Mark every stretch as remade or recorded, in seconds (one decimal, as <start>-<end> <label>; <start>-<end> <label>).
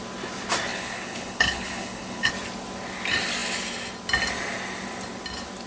0.0-0.7 recorded; 0.7-2.3 remade; 2.3-5.7 recorded